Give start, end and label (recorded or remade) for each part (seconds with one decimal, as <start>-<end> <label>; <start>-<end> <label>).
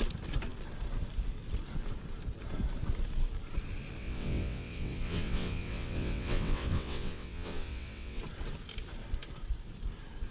0.0-4.0 recorded; 4.0-8.2 remade; 8.2-10.3 recorded